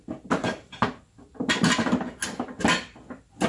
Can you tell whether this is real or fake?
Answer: real